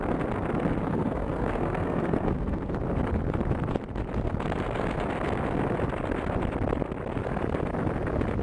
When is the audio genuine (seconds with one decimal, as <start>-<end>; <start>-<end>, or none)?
0.0-0.8; 2.7-8.4